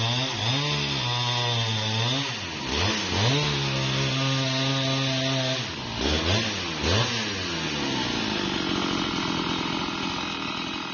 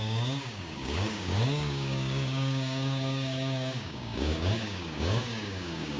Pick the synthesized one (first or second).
second